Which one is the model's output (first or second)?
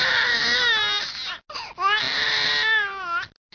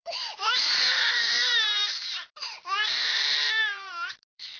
second